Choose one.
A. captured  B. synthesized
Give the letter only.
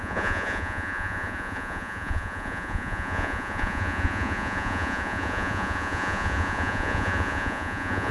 B